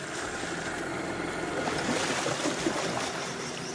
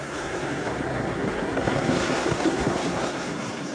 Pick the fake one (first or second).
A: second